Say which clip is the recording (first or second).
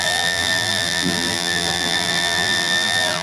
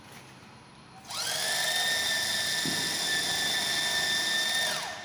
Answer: second